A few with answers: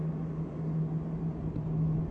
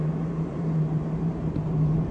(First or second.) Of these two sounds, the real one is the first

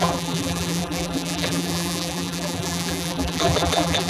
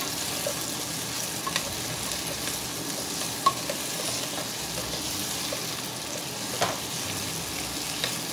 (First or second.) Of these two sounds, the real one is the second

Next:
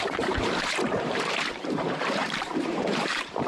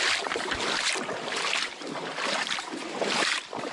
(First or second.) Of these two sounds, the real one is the second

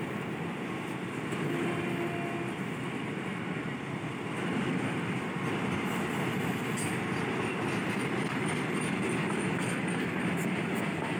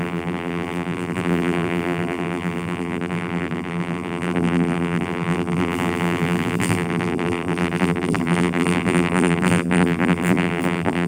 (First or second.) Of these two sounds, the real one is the first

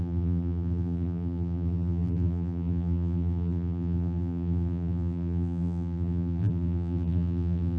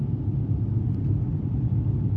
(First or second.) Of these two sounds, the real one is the second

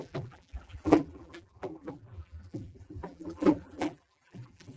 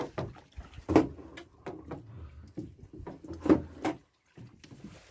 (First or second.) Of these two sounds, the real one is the second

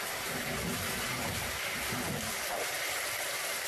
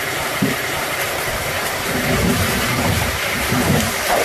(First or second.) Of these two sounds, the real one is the first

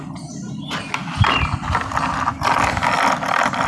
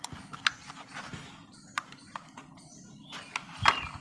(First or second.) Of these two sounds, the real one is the first